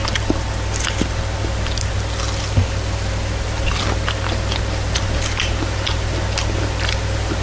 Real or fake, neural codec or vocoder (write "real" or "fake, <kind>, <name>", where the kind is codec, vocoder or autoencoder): real